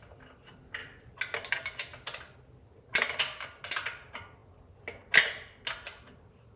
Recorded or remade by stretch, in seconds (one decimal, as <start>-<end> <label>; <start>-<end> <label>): 0.0-6.6 recorded